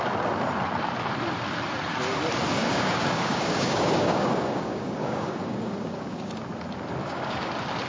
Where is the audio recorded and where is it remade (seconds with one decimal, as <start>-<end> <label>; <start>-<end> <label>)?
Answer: 0.0-2.5 recorded; 2.5-6.3 remade; 6.3-7.0 recorded; 7.0-7.5 remade; 7.5-7.9 recorded